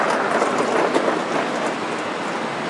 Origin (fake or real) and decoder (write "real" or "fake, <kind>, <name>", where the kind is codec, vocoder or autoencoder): real